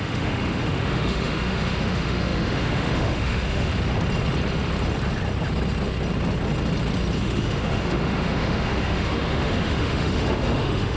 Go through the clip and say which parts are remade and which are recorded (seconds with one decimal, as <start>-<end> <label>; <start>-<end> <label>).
0.0-3.7 remade; 3.7-7.2 recorded; 7.2-11.0 remade